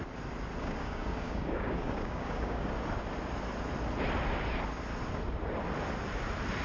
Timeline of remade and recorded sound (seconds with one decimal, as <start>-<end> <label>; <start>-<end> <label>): 0.0-0.6 recorded; 0.6-2.7 remade; 2.7-6.6 recorded